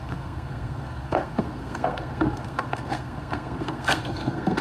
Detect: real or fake fake